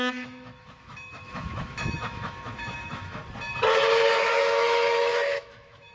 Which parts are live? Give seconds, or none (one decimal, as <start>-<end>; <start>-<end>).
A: 3.2-4.3